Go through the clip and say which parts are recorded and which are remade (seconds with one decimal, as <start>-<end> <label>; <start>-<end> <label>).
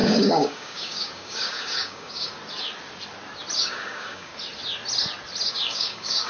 0.0-2.3 remade; 2.3-3.6 recorded; 3.6-4.3 remade; 4.3-5.5 recorded; 5.5-6.3 remade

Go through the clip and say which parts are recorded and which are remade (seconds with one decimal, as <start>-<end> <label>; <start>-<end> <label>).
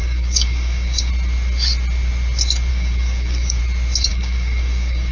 0.0-1.1 remade; 1.1-2.7 recorded; 2.7-3.6 remade; 3.6-4.1 recorded; 4.1-5.1 remade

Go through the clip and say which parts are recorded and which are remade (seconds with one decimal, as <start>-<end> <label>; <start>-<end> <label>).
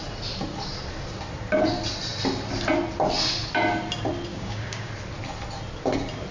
0.0-4.3 recorded; 4.3-4.9 remade; 4.9-6.3 recorded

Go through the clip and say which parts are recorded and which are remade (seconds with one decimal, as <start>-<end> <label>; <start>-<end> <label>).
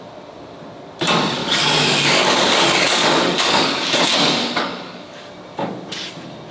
0.0-1.4 recorded; 1.4-5.3 remade; 5.3-6.5 recorded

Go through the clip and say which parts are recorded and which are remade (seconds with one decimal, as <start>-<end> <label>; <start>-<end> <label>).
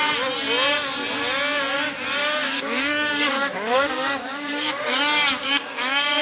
0.0-2.2 recorded; 2.2-5.0 remade; 5.0-5.4 recorded; 5.4-6.2 remade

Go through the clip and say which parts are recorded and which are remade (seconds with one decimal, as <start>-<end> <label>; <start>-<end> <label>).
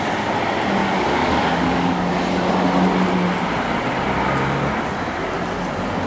0.0-0.8 recorded; 0.8-2.1 remade; 2.1-6.1 recorded